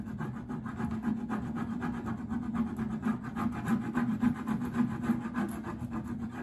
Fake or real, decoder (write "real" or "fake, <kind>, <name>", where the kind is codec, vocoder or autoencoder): real